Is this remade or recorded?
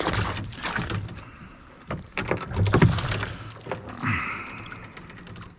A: recorded